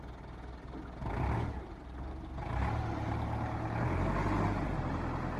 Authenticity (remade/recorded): recorded